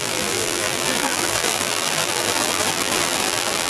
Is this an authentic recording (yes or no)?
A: no